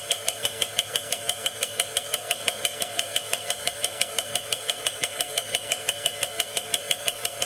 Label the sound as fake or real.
fake